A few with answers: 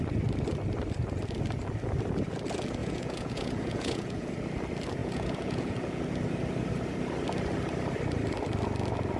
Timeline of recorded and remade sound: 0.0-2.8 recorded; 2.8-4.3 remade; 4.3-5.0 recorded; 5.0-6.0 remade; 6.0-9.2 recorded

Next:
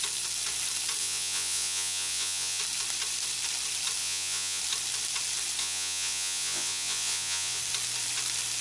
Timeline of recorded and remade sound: 0.0-1.0 recorded; 1.0-2.6 remade; 2.6-4.0 recorded; 4.0-4.6 remade; 4.6-5.6 recorded; 5.6-7.6 remade; 7.6-8.6 recorded

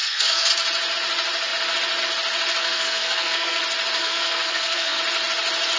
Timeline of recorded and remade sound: 0.0-0.5 remade; 0.5-2.6 recorded; 2.6-3.6 remade; 3.6-4.0 recorded; 4.0-5.0 remade; 5.0-5.8 recorded

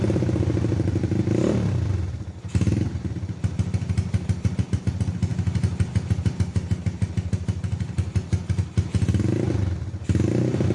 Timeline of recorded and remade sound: 0.0-10.7 recorded

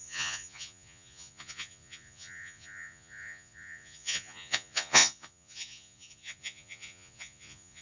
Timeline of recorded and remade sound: 0.0-7.8 remade

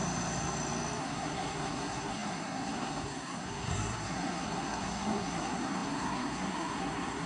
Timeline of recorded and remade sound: 0.0-1.0 recorded; 1.0-7.3 remade